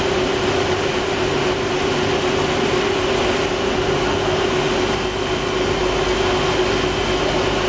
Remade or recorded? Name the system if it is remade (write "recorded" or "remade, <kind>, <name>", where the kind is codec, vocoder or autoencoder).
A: recorded